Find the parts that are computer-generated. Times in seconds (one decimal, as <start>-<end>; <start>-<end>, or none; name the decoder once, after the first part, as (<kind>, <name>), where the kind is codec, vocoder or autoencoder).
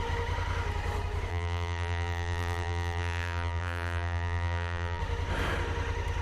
1.3-5.0 (vocoder, BigVGAN v2)